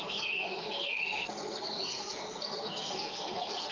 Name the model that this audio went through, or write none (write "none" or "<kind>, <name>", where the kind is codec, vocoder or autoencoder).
codec, SNAC